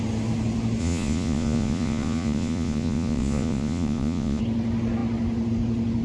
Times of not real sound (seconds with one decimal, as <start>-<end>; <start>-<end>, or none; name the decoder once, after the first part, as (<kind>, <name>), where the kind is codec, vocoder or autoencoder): 0.8-4.4 (vocoder, Vocos)